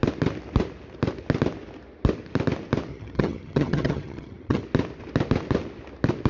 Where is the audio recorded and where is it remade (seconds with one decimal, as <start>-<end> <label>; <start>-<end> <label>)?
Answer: 0.0-2.9 recorded; 2.9-4.6 remade; 4.6-6.3 recorded